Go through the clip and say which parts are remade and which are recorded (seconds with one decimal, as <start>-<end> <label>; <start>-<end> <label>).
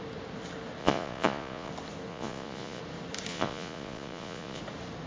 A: 0.0-0.8 recorded; 0.8-1.7 remade; 1.7-2.1 recorded; 2.1-2.8 remade; 2.8-3.3 recorded; 3.3-4.6 remade; 4.6-5.1 recorded